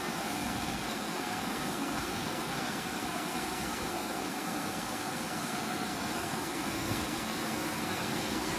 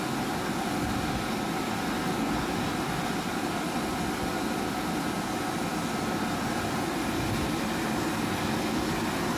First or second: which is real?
second